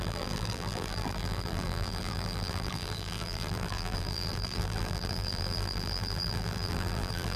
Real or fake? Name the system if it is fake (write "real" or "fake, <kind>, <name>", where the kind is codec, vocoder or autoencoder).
fake, vocoder, BigVGAN v2